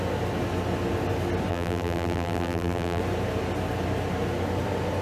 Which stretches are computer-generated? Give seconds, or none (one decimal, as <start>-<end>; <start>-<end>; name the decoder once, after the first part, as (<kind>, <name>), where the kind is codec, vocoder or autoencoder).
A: 1.5-3.0 (vocoder, BigVGAN v2)